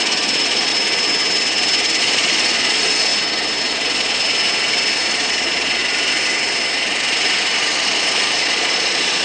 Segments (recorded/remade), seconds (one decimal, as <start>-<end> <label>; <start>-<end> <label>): 0.0-0.7 remade; 0.7-2.0 recorded; 2.0-3.1 remade; 3.1-3.6 recorded; 3.6-4.2 remade; 4.2-5.0 recorded; 5.0-5.8 remade; 5.8-8.4 recorded; 8.4-9.2 remade